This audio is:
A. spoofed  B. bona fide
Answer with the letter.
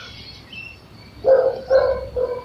B